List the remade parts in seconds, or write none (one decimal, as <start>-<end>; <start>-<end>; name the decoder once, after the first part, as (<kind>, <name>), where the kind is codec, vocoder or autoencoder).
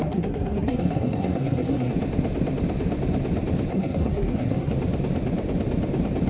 0.0-1.9 (codec, SNAC); 3.7-4.7